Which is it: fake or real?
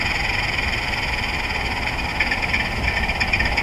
real